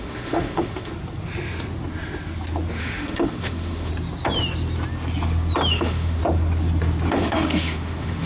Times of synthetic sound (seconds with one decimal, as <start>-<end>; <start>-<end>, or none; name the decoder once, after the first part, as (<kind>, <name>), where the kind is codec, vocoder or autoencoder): 0.0-0.9 (autoencoder, DAC-VAE); 2.8-3.9; 5.7-6.2; 7.1-8.3